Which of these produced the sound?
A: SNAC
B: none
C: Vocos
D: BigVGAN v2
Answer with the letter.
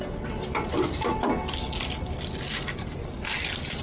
B